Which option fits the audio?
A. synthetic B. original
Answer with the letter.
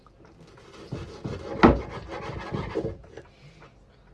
B